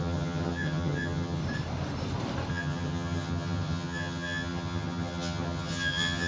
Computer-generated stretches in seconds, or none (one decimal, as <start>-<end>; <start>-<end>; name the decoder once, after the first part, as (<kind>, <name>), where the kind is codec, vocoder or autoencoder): 0.0-1.4 (vocoder, HiFi-GAN); 2.5-6.3